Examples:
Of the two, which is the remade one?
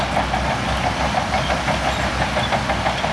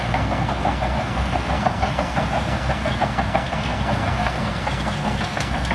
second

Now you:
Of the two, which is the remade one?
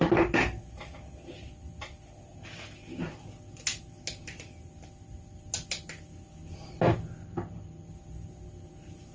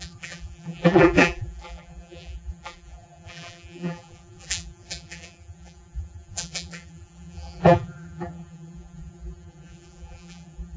second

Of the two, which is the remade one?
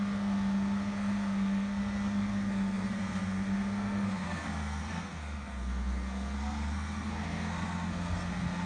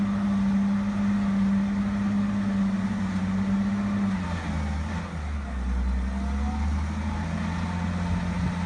first